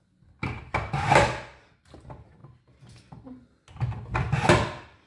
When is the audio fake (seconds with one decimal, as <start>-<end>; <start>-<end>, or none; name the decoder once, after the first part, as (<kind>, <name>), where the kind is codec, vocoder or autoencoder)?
none